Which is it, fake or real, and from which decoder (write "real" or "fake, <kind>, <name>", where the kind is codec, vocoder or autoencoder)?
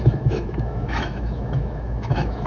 fake, autoencoder, DAC-VAE